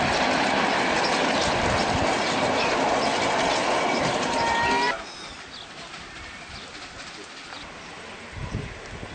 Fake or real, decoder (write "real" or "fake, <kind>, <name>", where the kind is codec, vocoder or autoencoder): real